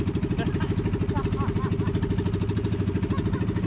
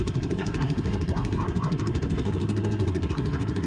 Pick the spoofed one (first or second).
second